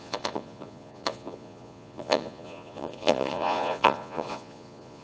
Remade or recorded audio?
remade